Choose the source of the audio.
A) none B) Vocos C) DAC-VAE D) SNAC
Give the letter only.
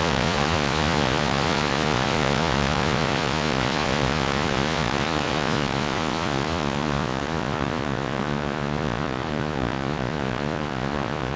B